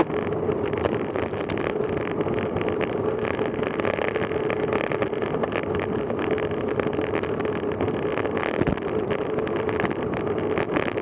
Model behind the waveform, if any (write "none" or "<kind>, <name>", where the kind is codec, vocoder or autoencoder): none